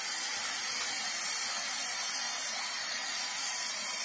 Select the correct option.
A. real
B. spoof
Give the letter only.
B